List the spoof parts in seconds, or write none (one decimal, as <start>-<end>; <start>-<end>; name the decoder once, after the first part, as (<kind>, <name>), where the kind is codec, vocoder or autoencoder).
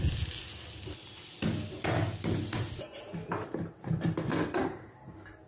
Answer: none